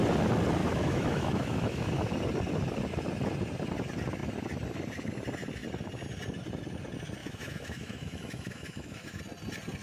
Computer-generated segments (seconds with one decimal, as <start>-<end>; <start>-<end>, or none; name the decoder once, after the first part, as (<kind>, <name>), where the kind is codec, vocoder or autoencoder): 0.6-2.1 (autoencoder, DAC-VAE); 7.2-9.2